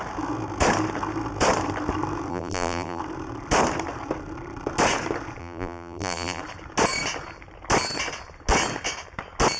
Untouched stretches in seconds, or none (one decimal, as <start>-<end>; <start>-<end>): 0.0-2.3; 3.0-5.4; 6.4-9.6